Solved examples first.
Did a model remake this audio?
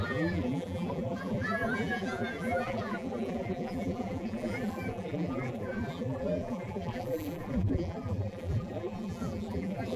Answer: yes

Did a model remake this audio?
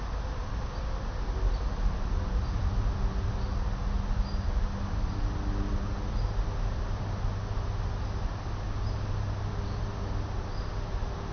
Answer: no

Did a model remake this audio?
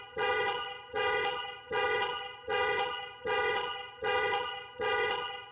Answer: yes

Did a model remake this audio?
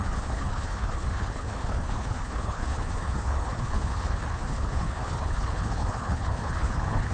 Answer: yes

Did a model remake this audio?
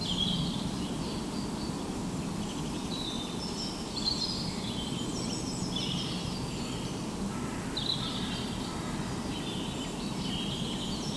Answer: no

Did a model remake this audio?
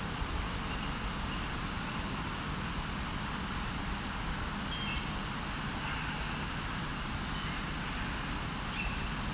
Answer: no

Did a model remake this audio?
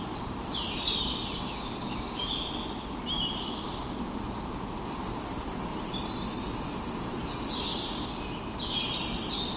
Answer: no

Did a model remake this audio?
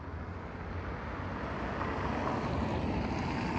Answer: no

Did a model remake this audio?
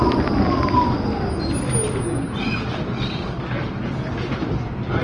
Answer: no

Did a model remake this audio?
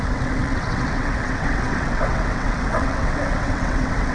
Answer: yes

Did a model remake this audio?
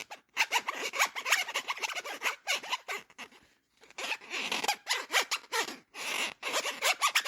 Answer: yes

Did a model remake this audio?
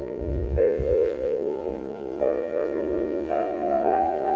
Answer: yes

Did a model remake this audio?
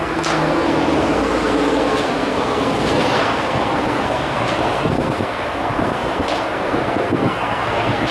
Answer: yes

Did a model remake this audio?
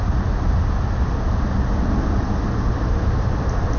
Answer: no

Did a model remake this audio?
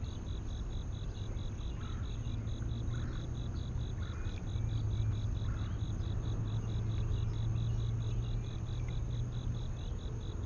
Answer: no